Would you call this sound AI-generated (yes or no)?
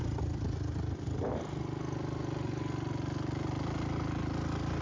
no